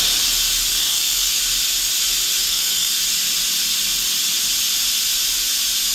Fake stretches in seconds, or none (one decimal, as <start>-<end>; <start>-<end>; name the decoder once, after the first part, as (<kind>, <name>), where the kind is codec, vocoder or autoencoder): 0.7-1.4 (codec, SNAC); 2.4-2.9